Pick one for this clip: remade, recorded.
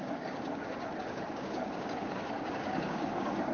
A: remade